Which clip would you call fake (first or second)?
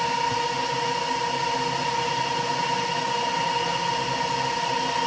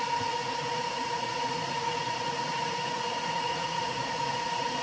second